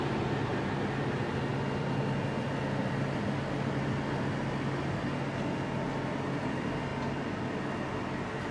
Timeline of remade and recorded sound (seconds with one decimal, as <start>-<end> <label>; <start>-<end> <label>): 0.0-8.5 recorded

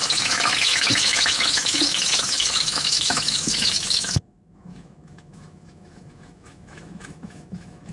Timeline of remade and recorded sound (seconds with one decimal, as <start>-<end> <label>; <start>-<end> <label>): 0.0-7.9 remade

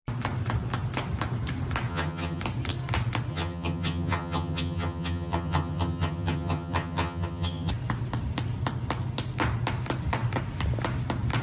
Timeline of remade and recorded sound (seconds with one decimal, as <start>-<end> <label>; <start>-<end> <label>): 0.0-1.9 recorded; 1.9-2.4 remade; 2.4-3.3 recorded; 3.3-7.7 remade; 7.7-11.4 recorded

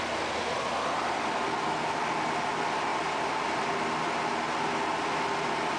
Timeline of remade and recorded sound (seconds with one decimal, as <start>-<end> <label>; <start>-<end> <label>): 0.0-5.8 recorded

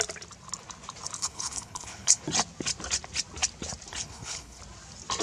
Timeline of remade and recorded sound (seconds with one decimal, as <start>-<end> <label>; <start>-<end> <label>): 0.0-1.2 recorded; 1.2-2.2 remade; 2.2-3.9 recorded; 3.9-4.6 remade; 4.6-5.2 recorded